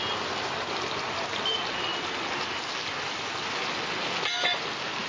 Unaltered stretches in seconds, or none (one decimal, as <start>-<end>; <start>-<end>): 0.0-5.1

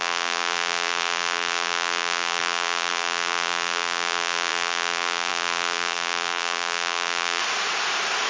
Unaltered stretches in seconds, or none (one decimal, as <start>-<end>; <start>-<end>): 7.4-8.3